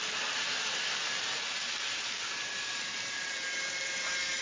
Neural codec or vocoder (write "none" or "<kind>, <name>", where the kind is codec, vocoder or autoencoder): none